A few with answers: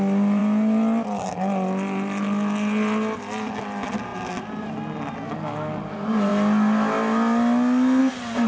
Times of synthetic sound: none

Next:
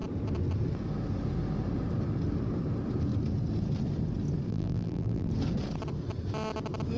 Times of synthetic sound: 4.5-5.3 (vocoder, BigVGAN v2)

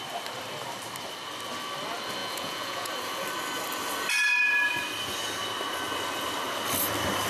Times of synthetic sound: 2.2-2.9 (vocoder, Vocos)

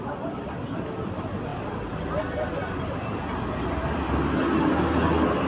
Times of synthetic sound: none

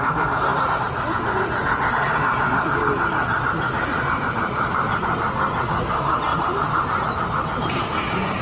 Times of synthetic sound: 0.5-5.2 (vocoder, BigVGAN v2); 6.3-7.7

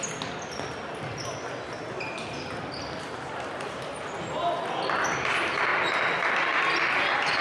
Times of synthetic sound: none

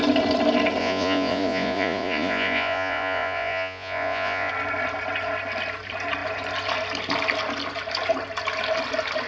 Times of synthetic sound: 0.8-4.5 (vocoder, Vocos)